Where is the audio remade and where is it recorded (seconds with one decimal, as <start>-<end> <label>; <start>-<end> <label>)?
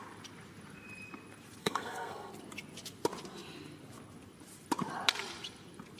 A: 0.0-1.6 recorded; 1.6-2.3 remade; 2.3-6.0 recorded